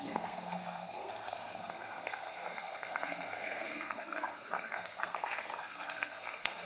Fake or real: fake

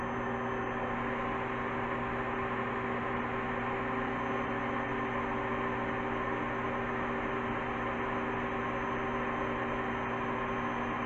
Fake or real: real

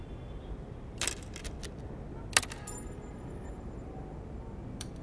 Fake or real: real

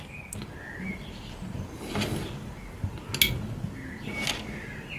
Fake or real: real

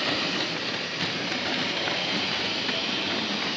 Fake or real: fake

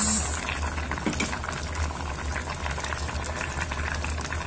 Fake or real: real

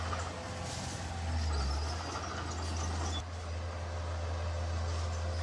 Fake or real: real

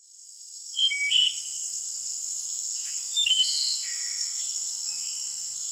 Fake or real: fake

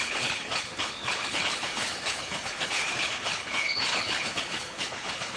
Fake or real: fake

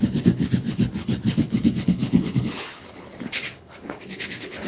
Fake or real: fake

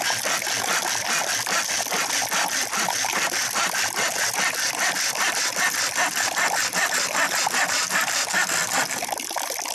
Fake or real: real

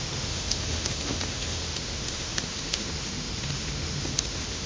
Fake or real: fake